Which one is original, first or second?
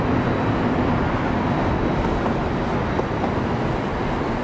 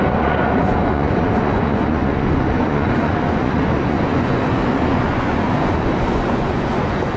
first